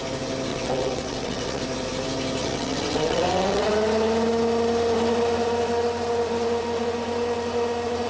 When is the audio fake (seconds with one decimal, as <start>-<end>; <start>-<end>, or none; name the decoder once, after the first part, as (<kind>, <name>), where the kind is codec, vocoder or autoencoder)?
0.5-1.6 (vocoder, WaveNeXt); 2.4-3.7